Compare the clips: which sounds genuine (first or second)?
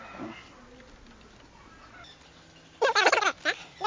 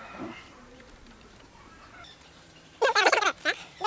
first